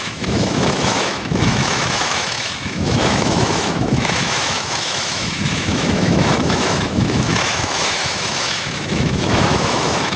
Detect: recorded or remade remade